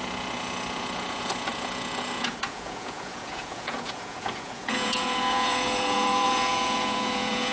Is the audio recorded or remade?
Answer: remade